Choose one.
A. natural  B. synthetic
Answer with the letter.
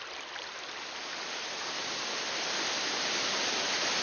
A